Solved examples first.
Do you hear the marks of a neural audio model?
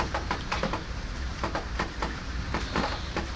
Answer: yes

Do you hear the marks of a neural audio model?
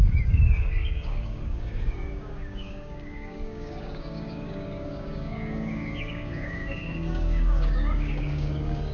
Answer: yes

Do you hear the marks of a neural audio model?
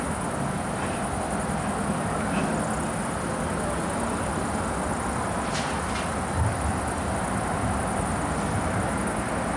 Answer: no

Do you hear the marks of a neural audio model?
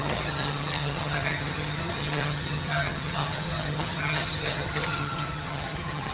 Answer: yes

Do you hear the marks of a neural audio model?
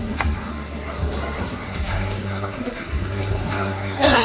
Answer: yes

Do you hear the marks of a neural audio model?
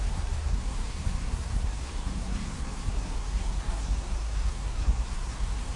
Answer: yes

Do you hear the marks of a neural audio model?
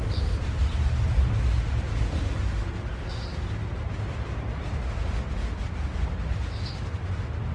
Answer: no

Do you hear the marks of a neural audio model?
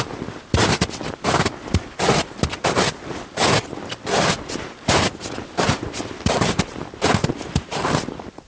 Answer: no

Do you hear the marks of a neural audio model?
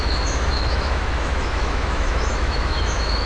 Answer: yes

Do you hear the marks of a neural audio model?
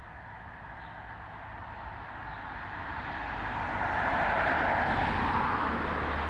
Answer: no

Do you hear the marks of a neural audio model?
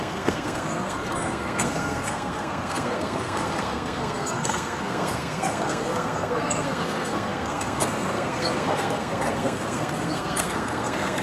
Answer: yes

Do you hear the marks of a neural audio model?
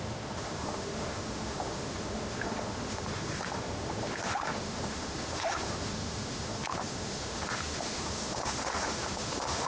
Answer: yes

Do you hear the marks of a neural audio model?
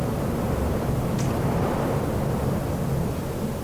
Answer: no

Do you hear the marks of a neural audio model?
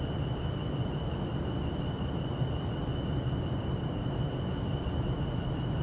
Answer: no